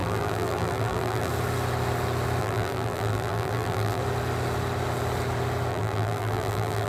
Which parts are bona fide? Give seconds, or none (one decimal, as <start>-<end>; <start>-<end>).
1.3-2.4; 4.0-5.7